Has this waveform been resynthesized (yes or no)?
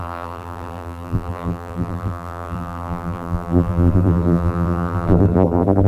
yes